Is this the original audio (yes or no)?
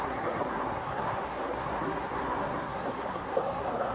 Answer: no